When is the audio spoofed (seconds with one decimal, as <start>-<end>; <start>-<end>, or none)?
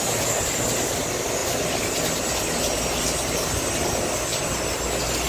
none